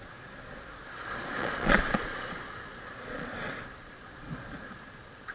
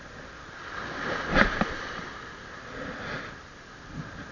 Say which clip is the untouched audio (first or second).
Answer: second